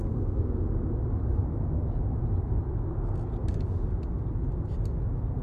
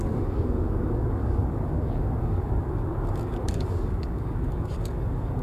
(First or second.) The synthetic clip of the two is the second